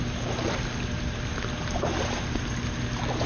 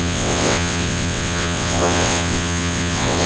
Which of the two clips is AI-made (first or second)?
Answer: second